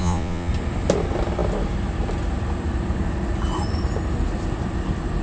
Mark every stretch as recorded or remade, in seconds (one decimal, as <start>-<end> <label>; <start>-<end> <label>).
0.0-0.5 remade; 0.5-5.2 recorded